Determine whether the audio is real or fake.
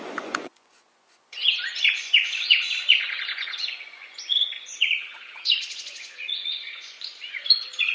fake